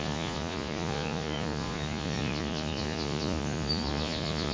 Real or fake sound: fake